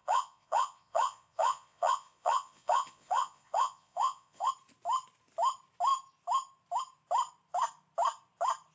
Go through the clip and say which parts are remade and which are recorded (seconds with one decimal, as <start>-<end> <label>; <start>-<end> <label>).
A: 0.0-4.5 remade; 4.5-8.7 recorded